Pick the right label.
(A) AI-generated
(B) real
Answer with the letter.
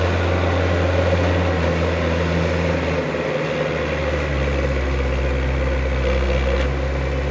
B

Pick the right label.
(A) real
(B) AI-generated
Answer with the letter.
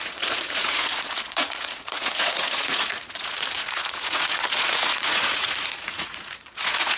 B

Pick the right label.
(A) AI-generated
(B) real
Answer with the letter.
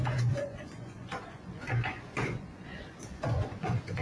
A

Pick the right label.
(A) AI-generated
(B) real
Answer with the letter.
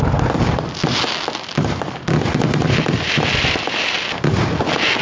B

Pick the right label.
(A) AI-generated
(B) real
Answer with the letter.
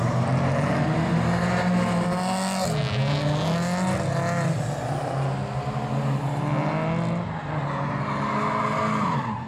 B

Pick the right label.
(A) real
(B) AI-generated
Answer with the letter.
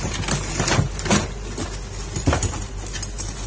A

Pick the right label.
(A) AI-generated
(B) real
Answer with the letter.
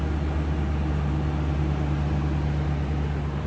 B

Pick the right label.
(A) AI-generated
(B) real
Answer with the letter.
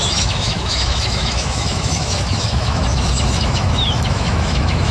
A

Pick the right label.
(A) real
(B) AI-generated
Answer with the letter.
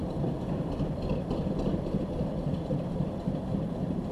B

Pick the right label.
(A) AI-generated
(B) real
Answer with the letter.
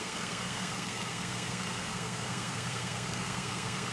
A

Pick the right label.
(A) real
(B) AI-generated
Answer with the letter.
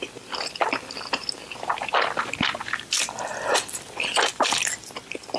B